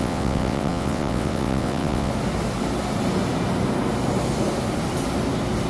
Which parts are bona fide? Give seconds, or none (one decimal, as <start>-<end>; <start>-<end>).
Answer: 2.1-5.7